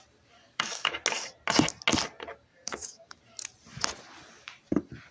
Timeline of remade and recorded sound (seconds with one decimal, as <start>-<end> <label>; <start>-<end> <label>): 0.0-0.4 recorded; 0.4-0.9 remade; 0.9-2.5 recorded; 2.5-3.2 remade; 3.2-5.1 recorded